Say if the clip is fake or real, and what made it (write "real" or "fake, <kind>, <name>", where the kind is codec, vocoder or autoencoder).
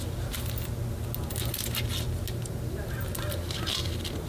real